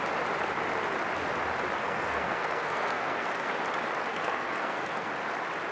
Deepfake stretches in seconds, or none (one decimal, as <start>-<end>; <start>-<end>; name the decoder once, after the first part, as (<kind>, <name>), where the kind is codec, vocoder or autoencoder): 1.8-3.5 (codec, SNAC); 4.1-5.1